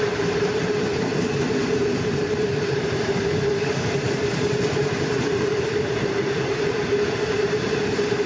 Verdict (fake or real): fake